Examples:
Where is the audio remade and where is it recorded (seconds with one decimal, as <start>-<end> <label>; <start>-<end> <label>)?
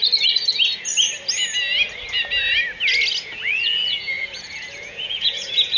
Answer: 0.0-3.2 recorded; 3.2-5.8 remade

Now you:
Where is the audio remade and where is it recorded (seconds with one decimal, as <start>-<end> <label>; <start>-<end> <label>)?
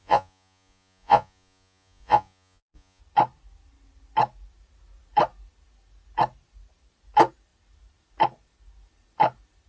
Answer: 0.0-3.0 remade; 3.0-9.7 recorded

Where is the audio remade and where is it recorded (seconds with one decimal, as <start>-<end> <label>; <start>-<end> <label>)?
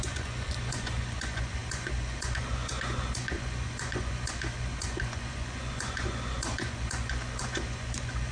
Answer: 0.0-8.3 remade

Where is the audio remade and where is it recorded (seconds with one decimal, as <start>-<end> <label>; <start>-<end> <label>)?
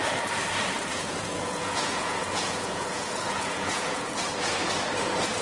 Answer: 0.0-0.9 recorded; 0.9-4.1 remade; 4.1-5.4 recorded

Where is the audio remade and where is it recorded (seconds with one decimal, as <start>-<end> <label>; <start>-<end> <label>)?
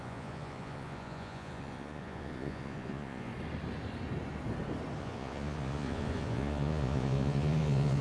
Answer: 0.0-3.3 remade; 3.3-5.0 recorded; 5.0-8.0 remade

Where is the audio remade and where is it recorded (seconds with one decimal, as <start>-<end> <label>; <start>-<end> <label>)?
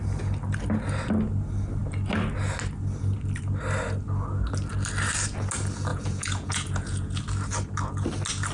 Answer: 0.0-5.9 recorded; 5.9-7.2 remade; 7.2-8.5 recorded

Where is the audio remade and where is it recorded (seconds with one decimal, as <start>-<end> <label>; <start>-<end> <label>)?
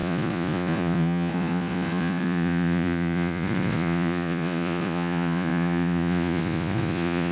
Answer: 0.0-7.3 remade